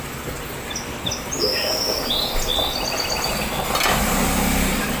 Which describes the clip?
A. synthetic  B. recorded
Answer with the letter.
B